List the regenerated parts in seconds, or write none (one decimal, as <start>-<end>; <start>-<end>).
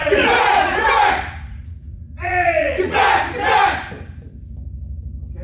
0.0-3.2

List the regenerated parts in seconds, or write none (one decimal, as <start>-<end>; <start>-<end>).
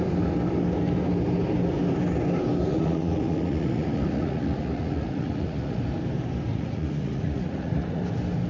2.7-5.8; 6.5-8.0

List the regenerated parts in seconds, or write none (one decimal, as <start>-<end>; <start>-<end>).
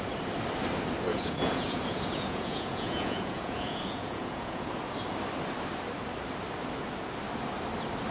1.1-4.7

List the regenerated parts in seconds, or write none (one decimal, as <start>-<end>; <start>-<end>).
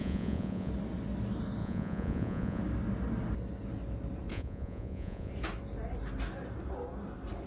0.0-0.7; 1.6-2.6; 4.3-5.3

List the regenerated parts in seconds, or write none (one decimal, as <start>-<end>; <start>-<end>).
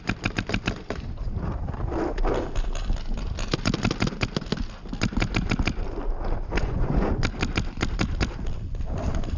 6.6-7.1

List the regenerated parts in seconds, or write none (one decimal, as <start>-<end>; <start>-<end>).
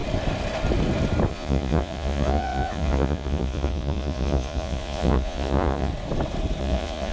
1.3-5.9; 6.6-7.1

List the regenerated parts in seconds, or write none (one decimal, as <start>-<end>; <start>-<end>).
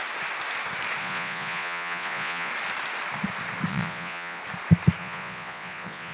1.0-2.5; 3.7-4.4; 5.0-6.1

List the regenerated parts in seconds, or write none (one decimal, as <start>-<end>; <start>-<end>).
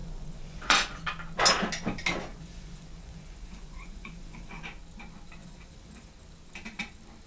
0.0-1.0; 2.3-4.6; 5.4-6.1